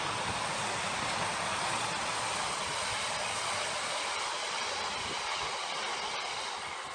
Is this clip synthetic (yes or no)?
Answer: no